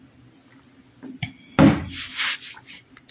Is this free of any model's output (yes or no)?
yes